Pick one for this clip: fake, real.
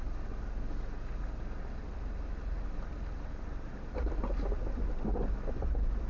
real